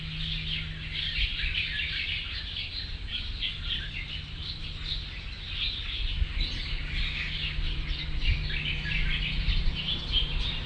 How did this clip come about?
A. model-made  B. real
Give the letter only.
B